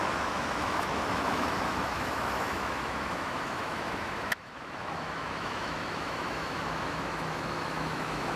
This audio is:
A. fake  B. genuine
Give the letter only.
A